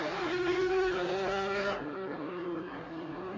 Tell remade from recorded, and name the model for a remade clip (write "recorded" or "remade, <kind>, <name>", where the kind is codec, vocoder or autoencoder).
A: remade, codec, SNAC